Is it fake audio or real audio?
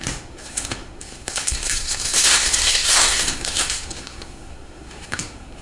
fake